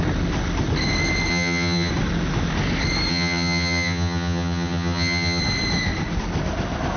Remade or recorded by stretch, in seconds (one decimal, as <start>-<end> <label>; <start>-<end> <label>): 0.0-1.3 recorded; 1.3-1.9 remade; 1.9-3.1 recorded; 3.1-5.4 remade; 5.4-7.0 recorded